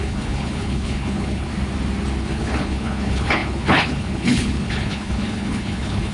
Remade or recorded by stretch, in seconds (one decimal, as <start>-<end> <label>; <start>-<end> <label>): 0.0-1.5 remade; 1.5-2.2 recorded; 2.2-6.1 remade